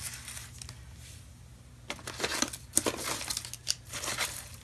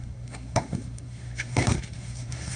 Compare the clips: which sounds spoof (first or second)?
second